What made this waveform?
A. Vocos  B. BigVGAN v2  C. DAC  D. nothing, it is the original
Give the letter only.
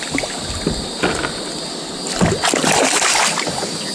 D